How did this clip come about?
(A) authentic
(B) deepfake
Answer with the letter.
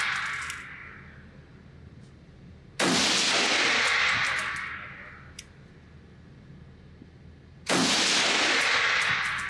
A